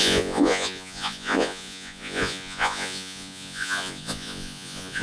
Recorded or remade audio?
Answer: remade